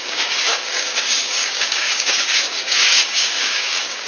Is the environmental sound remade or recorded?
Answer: remade